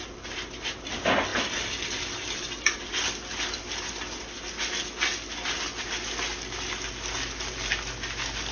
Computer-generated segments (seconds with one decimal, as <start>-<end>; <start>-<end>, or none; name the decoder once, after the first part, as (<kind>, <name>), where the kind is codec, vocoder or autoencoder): none